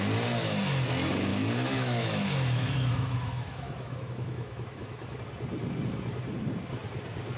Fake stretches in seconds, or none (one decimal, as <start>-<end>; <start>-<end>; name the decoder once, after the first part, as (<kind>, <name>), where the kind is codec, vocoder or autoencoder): 1.3-5.2 (autoencoder, DAC-VAE)